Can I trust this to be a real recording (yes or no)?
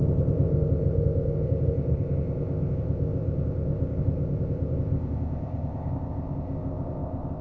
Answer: no